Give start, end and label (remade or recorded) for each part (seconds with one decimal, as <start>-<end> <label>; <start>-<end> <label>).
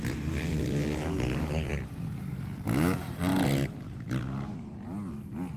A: 0.0-5.6 recorded